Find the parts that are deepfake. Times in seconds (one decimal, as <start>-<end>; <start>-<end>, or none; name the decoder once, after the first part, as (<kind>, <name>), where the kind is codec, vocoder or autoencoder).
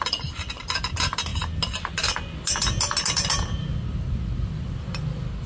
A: none